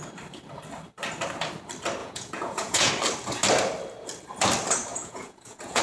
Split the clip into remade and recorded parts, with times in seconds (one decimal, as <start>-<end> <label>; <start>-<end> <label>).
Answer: 0.0-2.0 recorded; 2.0-2.9 remade; 2.9-4.9 recorded; 4.9-5.8 remade